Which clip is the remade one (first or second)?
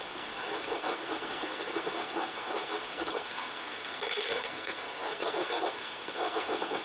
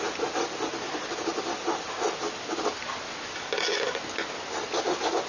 first